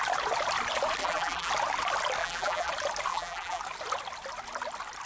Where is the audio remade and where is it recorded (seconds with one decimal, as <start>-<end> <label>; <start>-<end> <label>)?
0.0-1.0 recorded; 1.0-1.5 remade; 1.5-2.2 recorded; 2.2-2.7 remade; 2.7-3.1 recorded; 3.1-3.6 remade; 3.6-5.1 recorded

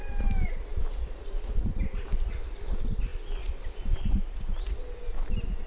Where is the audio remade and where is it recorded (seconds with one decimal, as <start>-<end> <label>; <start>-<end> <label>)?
0.0-3.1 recorded; 3.1-4.0 remade; 4.0-5.7 recorded

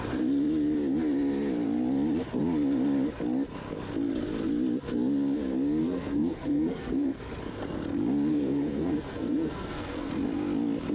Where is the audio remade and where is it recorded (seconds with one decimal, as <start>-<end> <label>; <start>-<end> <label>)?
0.0-5.8 recorded; 5.8-7.2 remade; 7.2-8.3 recorded; 8.3-10.1 remade; 10.1-10.9 recorded

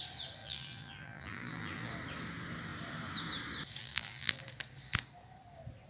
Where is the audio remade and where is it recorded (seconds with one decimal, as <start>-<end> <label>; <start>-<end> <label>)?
0.0-0.4 recorded; 0.4-1.9 remade; 1.9-3.8 recorded; 3.8-4.4 remade; 4.4-5.9 recorded

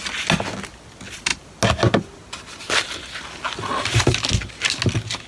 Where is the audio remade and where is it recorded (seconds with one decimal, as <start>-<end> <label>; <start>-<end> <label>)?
0.0-5.3 recorded